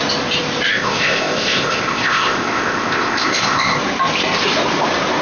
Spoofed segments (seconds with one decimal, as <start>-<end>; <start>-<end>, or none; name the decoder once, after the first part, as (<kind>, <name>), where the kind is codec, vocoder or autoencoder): 0.7-3.8 (codec, ZipCodec)